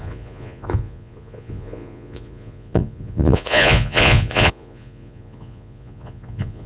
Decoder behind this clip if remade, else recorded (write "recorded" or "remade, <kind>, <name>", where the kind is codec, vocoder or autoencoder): remade, vocoder, Vocos